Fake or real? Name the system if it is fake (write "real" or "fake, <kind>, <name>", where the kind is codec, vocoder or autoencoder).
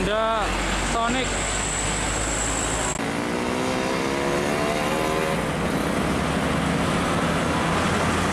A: real